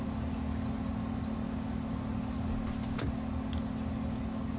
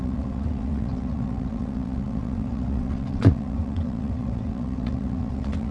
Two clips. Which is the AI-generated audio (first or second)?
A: second